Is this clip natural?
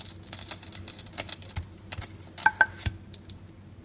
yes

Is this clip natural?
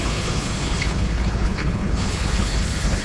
no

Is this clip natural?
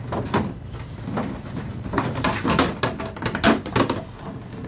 yes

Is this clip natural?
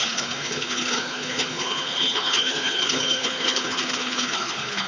no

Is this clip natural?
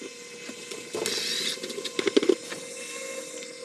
yes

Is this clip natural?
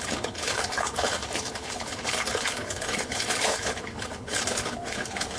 no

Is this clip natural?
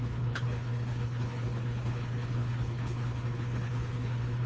no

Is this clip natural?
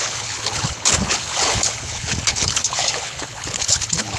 no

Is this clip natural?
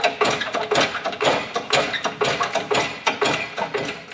yes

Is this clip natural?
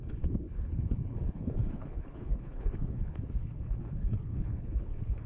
no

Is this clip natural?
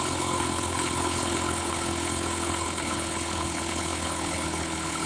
no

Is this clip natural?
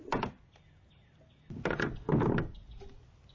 yes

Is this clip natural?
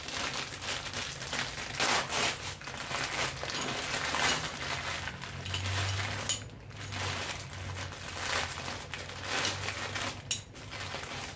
yes